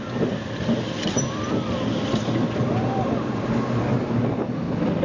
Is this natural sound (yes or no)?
yes